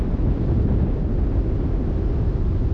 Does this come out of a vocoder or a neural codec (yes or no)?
no